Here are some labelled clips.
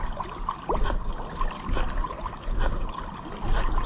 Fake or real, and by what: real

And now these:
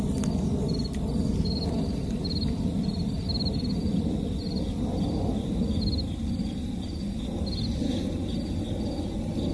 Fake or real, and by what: real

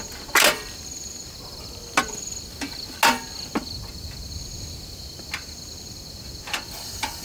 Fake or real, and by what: real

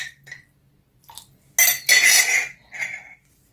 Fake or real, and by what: real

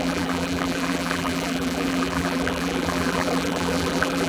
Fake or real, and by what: fake, vocoder, BigVGAN v2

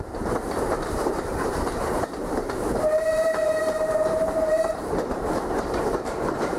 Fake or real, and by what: fake, vocoder, BigVGAN v2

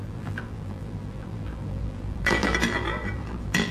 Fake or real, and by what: fake, vocoder, BigVGAN v2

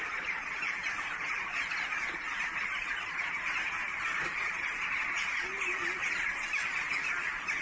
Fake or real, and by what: real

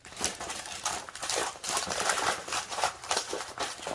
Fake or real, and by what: fake, vocoder, BigVGAN v2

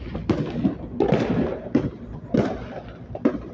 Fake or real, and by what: real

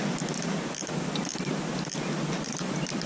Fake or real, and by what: real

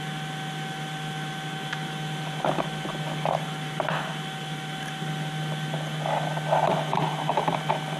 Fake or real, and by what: real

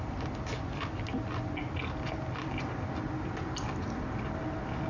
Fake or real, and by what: real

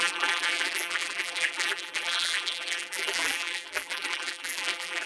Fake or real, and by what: fake, vocoder, BigVGAN v2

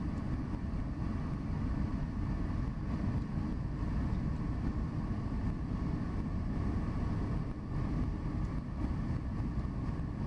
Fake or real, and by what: real